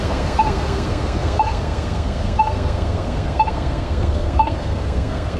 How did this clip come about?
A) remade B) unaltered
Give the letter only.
A